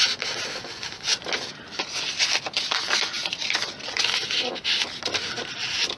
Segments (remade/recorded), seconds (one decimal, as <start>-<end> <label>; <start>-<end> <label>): 0.0-6.0 recorded